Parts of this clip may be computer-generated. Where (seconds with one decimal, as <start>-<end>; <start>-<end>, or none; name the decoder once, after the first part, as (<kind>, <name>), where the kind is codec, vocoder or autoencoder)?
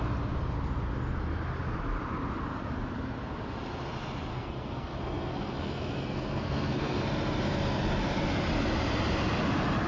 4.3-7.0 (codec, SNAC)